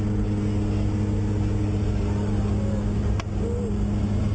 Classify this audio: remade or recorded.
recorded